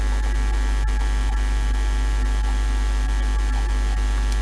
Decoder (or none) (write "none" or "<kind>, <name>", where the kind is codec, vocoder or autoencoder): none